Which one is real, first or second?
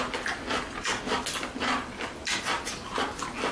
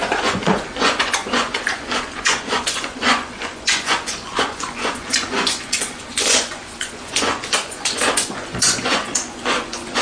first